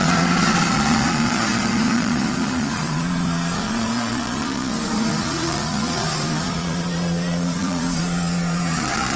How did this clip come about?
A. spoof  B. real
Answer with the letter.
A